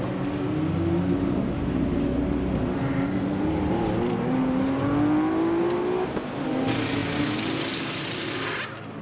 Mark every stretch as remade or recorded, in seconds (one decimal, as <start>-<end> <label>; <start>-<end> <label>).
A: 0.0-9.0 recorded